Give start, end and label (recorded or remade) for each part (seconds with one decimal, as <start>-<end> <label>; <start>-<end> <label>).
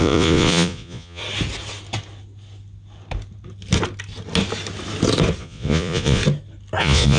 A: 0.0-1.2 remade; 1.2-5.4 recorded; 5.4-6.2 remade; 6.2-6.8 recorded; 6.8-7.2 remade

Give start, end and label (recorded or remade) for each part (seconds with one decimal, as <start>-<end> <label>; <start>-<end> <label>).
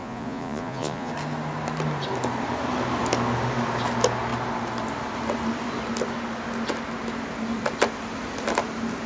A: 0.0-1.1 remade; 1.1-9.1 recorded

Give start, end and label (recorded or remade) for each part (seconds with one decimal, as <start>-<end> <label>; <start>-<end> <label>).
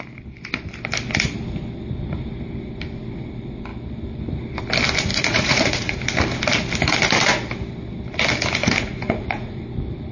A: 0.0-5.1 recorded; 5.1-6.0 remade; 6.0-8.6 recorded; 8.6-9.6 remade; 9.6-10.1 recorded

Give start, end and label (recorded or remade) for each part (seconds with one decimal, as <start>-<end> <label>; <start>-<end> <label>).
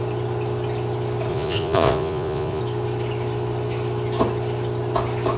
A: 0.0-1.3 recorded; 1.3-2.6 remade; 2.6-5.4 recorded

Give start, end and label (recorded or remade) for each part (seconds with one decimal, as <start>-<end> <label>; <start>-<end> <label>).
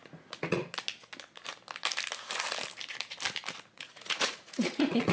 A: 0.0-0.6 remade; 0.6-3.7 recorded; 3.7-5.1 remade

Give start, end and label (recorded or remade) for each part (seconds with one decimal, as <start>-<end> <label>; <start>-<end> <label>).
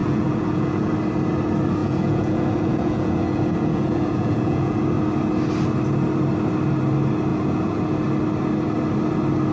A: 0.0-0.9 remade; 0.9-1.8 recorded; 1.8-4.8 remade; 4.8-7.3 recorded; 7.3-7.8 remade; 7.8-9.5 recorded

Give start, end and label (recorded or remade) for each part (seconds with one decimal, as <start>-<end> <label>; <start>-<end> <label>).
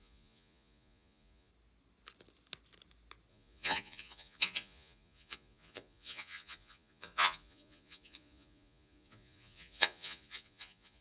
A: 0.0-1.5 remade; 1.5-3.3 recorded; 3.3-11.0 remade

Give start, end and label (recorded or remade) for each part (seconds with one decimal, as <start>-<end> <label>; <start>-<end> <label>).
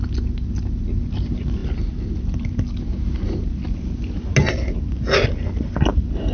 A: 0.0-6.3 recorded